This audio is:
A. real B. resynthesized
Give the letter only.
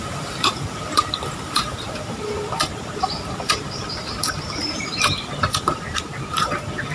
B